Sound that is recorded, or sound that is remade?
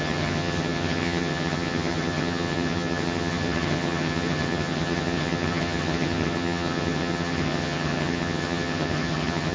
remade